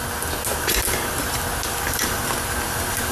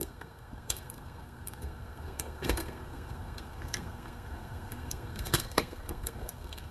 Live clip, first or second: first